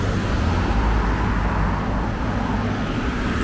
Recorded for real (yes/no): yes